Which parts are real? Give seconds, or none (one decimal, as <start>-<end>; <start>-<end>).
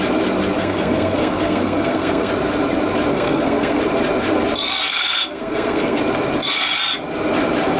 0.0-0.6; 2.3-3.1; 3.8-4.9; 6.0-7.8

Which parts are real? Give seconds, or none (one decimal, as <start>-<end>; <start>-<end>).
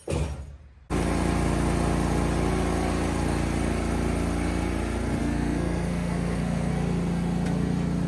0.0-5.2; 6.7-8.1